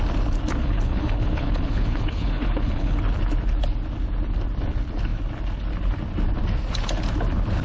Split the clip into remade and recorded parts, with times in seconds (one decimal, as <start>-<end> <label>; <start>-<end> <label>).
0.0-0.6 recorded; 0.6-3.0 remade; 3.0-7.6 recorded